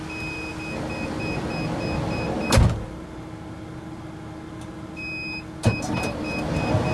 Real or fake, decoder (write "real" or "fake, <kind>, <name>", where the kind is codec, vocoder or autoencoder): real